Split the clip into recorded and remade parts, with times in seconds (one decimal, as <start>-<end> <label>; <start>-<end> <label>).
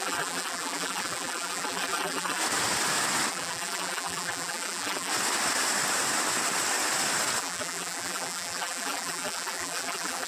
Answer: 0.0-2.4 remade; 2.4-3.3 recorded; 3.3-5.1 remade; 5.1-7.4 recorded; 7.4-10.3 remade